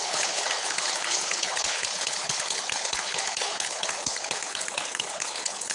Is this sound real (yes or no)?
no